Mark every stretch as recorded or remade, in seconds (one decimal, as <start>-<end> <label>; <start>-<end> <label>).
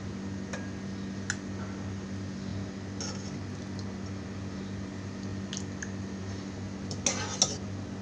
0.0-8.0 recorded